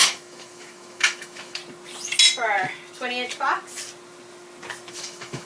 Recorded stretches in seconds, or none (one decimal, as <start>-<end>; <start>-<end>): 1.6-4.9